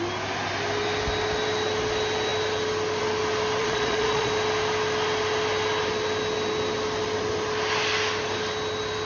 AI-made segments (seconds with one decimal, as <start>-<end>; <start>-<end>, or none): 3.6-4.3